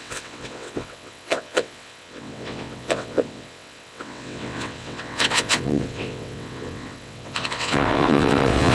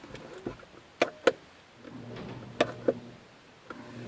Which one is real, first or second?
second